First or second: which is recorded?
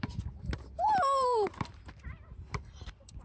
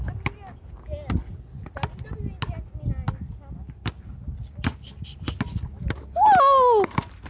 second